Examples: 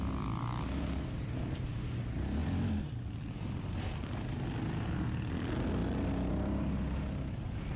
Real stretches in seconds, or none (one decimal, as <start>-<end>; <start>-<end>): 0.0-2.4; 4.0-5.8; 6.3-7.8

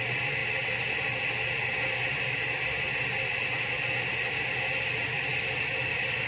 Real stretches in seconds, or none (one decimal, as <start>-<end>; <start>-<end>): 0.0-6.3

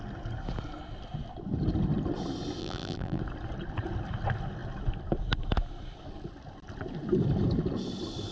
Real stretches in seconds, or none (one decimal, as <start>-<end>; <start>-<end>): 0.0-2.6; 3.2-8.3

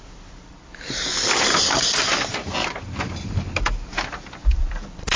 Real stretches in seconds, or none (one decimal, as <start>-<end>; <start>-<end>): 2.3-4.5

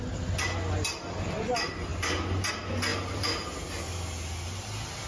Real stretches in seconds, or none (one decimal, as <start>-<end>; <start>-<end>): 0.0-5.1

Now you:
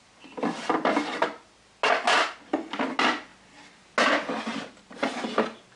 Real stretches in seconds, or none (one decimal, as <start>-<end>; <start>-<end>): 0.0-5.8

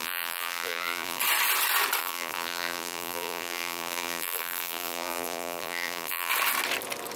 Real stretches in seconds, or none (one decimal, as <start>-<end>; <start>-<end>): 1.2-2.0; 6.3-7.2

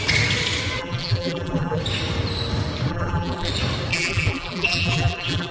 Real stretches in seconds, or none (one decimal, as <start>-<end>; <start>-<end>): 0.0-0.8; 1.8-2.9; 3.5-3.9